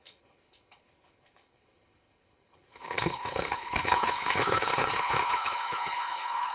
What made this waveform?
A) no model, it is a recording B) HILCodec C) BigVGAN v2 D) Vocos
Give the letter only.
B